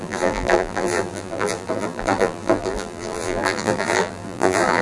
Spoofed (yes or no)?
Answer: yes